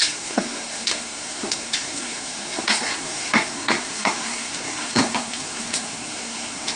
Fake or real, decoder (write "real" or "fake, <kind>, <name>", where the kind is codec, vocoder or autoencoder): fake, codec, SNAC